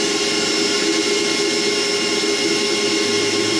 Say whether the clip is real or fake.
real